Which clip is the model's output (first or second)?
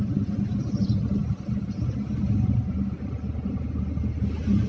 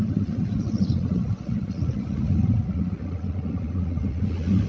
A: second